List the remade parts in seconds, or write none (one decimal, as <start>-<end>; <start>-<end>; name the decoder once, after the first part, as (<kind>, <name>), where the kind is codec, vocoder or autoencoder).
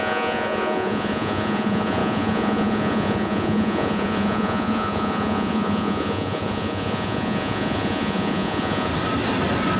0.0-8.9 (vocoder, Vocos)